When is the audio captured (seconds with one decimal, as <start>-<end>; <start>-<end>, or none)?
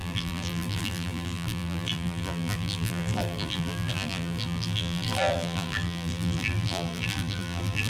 none